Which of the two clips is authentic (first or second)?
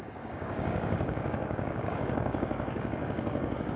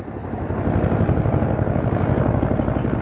second